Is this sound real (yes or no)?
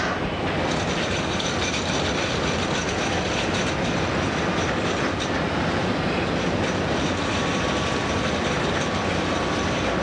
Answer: yes